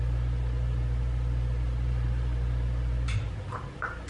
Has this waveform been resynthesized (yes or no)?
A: no